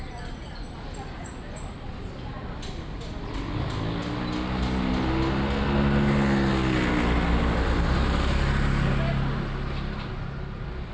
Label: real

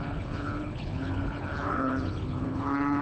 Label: fake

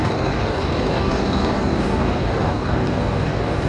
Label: fake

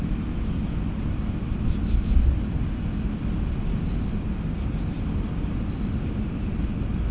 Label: real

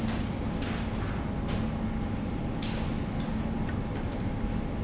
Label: real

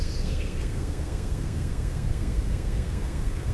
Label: fake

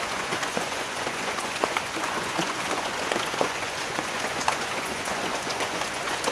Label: fake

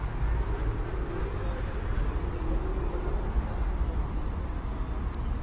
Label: real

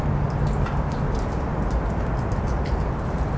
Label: real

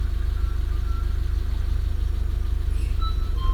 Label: real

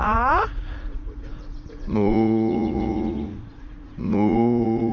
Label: fake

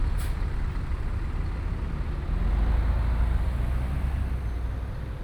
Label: real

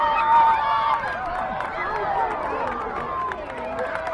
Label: real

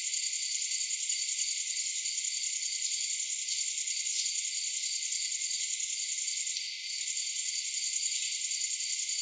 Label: real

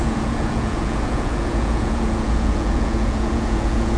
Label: fake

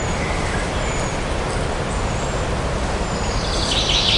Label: real